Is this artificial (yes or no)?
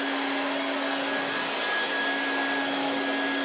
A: no